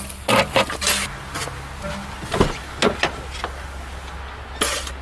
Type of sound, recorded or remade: recorded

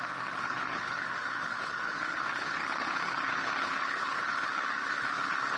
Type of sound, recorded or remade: remade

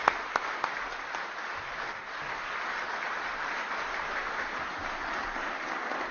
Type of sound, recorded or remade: recorded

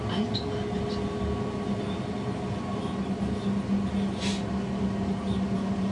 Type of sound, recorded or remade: recorded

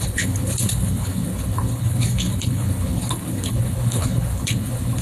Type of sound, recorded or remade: remade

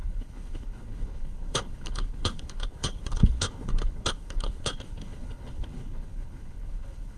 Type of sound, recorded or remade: remade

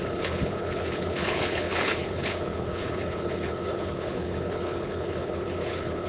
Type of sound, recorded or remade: remade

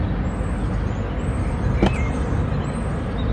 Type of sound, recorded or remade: recorded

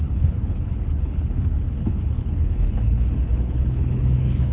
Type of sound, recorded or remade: remade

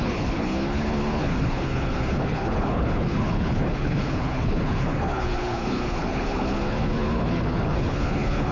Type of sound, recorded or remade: remade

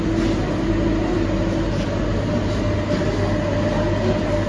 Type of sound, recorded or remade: recorded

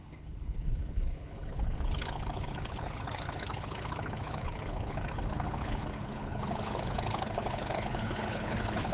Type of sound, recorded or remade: remade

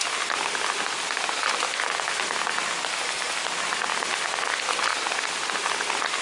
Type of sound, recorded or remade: recorded